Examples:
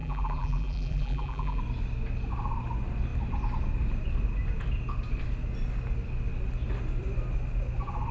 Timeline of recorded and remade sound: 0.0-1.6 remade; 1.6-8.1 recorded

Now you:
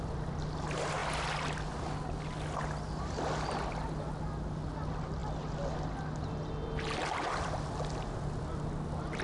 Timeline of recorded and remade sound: 0.0-9.2 recorded

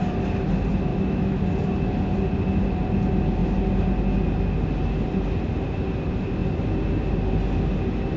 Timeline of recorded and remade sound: 0.0-0.9 recorded; 0.9-1.5 remade; 1.5-8.2 recorded

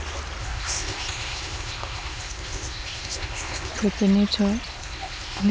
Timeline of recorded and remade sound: 0.0-0.4 recorded; 0.4-3.7 remade; 3.7-4.7 recorded; 4.7-5.5 remade

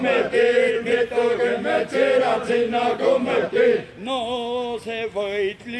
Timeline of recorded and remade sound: 0.0-5.8 recorded

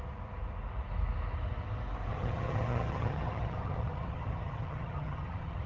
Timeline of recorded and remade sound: 0.0-2.1 recorded; 2.1-5.7 remade